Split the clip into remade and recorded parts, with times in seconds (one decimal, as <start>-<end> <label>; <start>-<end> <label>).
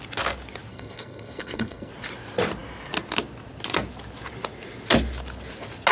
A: 0.0-0.7 recorded; 0.7-1.9 remade; 1.9-5.9 recorded